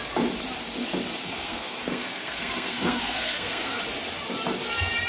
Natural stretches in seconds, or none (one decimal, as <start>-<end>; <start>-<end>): 0.0-1.2; 3.8-5.1